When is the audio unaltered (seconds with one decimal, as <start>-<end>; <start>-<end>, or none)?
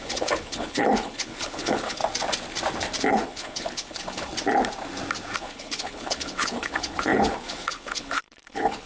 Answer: 2.0-3.1; 4.3-5.4